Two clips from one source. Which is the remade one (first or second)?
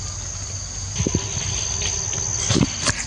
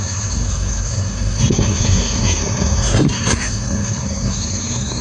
second